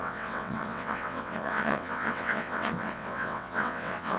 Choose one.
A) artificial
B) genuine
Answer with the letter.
A